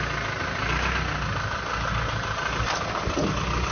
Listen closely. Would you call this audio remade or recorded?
recorded